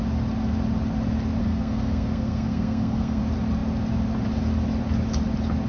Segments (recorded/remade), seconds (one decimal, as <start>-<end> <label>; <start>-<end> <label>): 0.0-1.4 recorded; 1.4-3.2 remade; 3.2-5.7 recorded